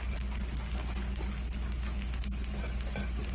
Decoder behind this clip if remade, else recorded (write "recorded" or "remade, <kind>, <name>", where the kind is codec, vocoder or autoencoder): recorded